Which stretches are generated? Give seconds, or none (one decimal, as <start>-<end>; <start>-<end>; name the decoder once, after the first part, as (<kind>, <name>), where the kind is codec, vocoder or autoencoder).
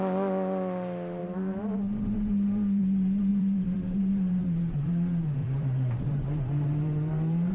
1.2-2.8 (vocoder, BigVGAN v2); 3.3-4.4; 5.4-7.5